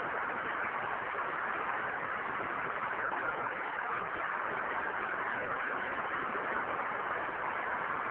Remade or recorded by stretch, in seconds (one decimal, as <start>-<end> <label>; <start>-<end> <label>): 0.0-3.0 recorded; 3.0-4.1 remade; 4.1-5.3 recorded; 5.3-5.9 remade; 5.9-8.1 recorded